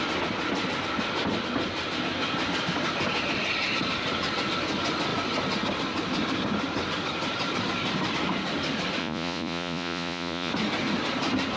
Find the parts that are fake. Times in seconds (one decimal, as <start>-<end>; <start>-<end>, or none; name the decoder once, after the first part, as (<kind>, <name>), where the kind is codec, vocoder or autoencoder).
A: 9.0-10.5 (vocoder, Vocos)